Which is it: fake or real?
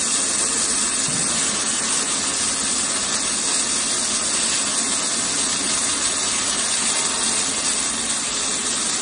real